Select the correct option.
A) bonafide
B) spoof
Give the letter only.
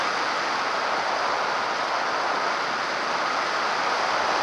A